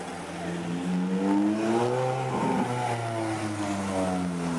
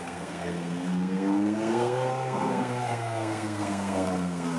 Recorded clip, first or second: first